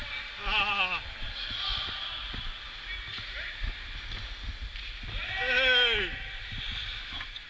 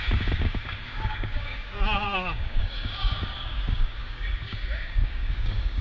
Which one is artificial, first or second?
second